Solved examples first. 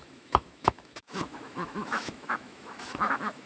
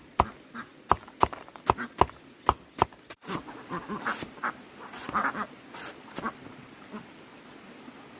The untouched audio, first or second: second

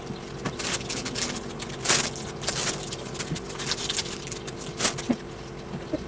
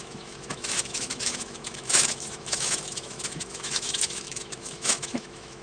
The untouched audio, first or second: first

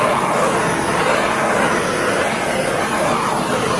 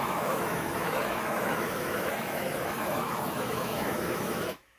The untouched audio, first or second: first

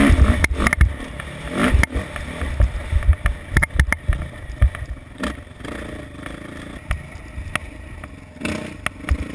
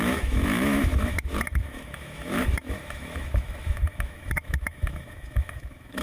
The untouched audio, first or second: first